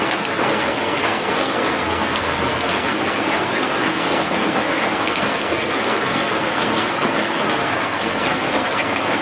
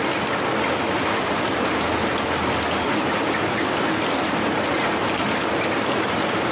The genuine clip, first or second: second